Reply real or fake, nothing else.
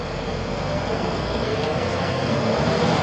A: fake